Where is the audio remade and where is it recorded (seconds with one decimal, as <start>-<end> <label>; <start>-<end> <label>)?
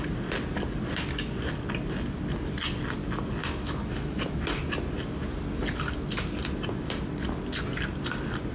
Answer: 0.0-3.4 recorded; 3.4-4.6 remade; 4.6-8.5 recorded